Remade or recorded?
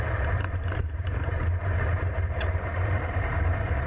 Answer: remade